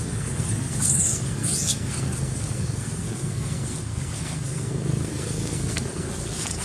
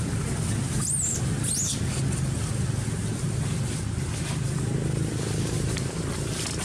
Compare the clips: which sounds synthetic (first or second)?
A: first